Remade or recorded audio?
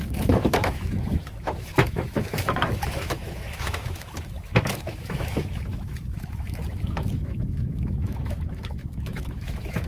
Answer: remade